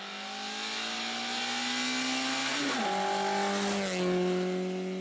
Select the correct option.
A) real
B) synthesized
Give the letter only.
A